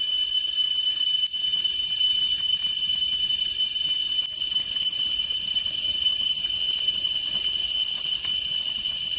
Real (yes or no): yes